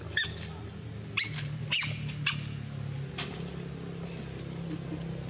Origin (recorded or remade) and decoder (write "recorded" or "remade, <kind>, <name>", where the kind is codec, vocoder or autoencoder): recorded